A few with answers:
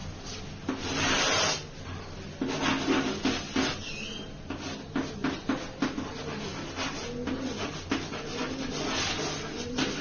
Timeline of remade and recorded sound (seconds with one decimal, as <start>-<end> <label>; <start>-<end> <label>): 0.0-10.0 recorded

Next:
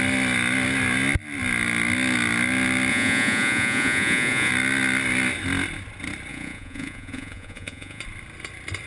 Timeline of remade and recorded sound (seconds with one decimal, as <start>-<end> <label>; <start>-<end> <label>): 0.0-2.9 recorded; 2.9-4.5 remade; 4.5-6.3 recorded; 6.3-8.0 remade; 8.0-8.9 recorded

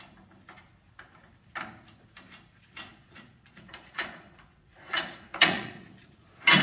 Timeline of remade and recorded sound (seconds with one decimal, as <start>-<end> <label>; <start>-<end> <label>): 0.0-2.9 recorded; 2.9-5.8 remade; 5.8-6.6 recorded

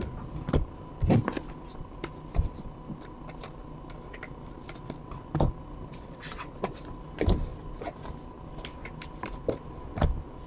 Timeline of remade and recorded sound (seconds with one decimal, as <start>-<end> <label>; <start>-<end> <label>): 0.0-5.9 recorded; 5.9-6.8 remade; 6.8-10.5 recorded

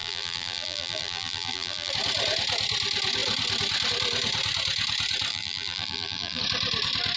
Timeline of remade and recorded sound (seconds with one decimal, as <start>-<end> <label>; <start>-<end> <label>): 0.0-1.9 remade; 1.9-5.3 recorded; 5.3-6.4 remade; 6.4-7.2 recorded